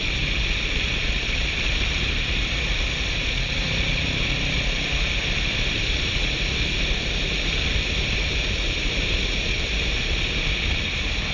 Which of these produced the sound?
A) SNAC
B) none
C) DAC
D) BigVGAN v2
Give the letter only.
D